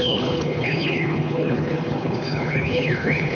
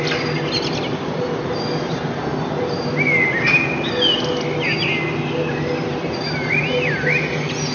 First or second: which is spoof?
first